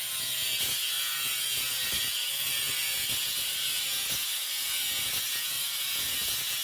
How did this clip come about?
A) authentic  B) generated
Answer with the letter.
B